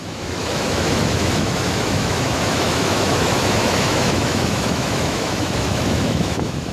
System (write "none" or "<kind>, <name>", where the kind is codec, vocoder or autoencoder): autoencoder, DAC-VAE